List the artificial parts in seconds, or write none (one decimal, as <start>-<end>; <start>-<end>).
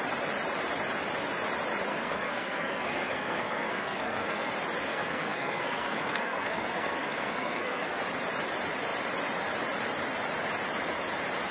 1.9-4.5; 4.9-8.0